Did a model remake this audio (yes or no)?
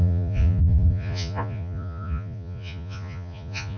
yes